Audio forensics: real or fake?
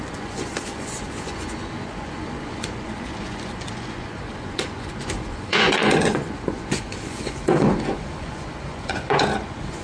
fake